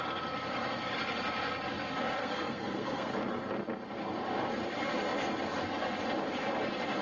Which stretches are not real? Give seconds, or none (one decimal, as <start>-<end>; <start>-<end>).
2.2-3.1